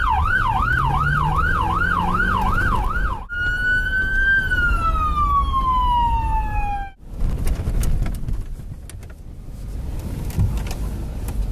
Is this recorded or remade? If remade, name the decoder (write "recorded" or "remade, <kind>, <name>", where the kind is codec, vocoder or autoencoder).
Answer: recorded